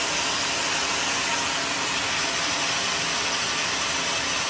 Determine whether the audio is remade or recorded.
recorded